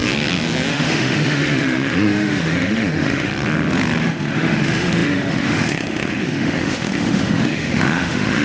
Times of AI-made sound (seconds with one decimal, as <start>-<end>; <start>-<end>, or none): 0.7-3.3; 4.0-8.4

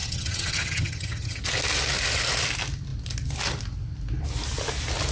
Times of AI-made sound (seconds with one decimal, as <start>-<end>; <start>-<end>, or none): 0.0-1.4